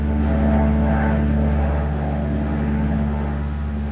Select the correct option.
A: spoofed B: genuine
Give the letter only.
A